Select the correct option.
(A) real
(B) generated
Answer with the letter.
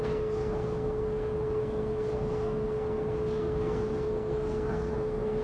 B